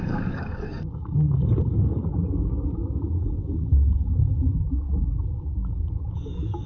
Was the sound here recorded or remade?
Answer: remade